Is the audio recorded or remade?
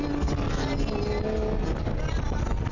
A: recorded